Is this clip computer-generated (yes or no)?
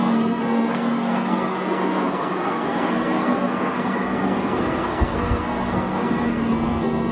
yes